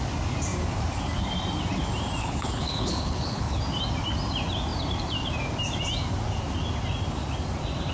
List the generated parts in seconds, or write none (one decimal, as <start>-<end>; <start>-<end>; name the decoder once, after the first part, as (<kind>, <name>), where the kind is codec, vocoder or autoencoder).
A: 2.2-3.6 (codec, HILCodec)